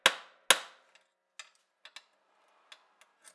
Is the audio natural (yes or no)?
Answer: yes